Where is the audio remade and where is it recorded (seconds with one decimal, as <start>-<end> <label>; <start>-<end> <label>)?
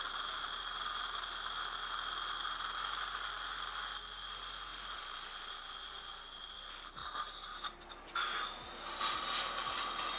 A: 0.0-10.2 recorded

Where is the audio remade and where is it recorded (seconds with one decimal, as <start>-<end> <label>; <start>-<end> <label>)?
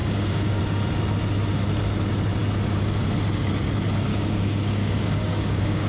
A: 0.0-0.6 remade; 0.6-4.1 recorded; 4.1-5.9 remade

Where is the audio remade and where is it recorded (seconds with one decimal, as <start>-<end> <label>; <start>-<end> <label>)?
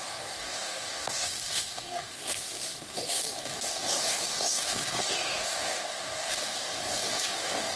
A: 0.0-7.8 remade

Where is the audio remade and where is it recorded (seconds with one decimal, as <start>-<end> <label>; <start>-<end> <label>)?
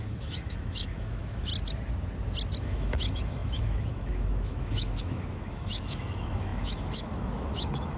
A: 0.0-1.5 remade; 1.5-2.6 recorded; 2.6-8.0 remade